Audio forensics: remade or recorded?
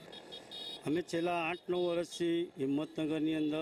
recorded